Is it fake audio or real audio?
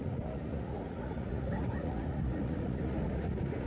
fake